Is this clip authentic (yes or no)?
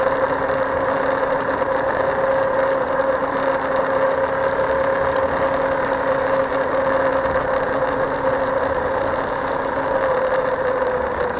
yes